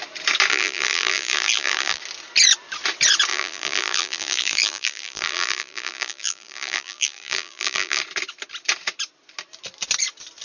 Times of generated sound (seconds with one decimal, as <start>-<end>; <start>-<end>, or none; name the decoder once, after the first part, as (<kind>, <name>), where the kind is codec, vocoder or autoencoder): 0.5-2.0 (vocoder, BigVGAN v2); 3.3-8.0